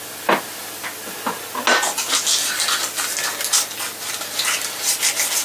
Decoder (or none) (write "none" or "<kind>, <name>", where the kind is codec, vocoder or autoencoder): none